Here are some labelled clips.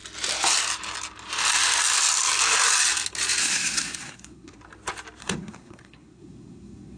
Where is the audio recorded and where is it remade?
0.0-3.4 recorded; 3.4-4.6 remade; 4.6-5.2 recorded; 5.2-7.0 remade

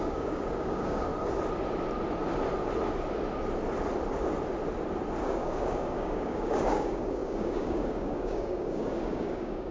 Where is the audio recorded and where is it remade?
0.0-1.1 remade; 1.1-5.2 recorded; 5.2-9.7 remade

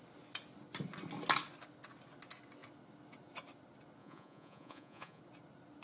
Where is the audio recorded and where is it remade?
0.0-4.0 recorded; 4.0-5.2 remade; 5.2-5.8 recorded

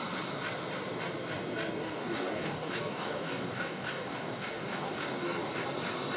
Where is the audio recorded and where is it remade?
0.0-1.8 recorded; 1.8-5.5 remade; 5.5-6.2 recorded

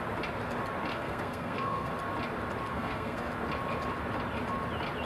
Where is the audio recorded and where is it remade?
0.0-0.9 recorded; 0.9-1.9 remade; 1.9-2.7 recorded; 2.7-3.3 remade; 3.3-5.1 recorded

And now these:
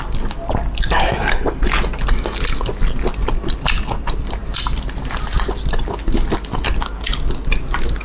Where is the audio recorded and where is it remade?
0.0-8.0 recorded

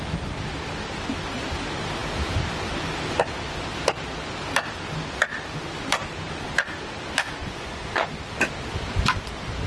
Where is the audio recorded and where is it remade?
0.0-7.4 recorded; 7.4-8.1 remade; 8.1-9.7 recorded

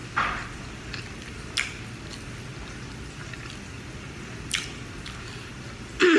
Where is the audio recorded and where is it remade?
0.0-6.2 recorded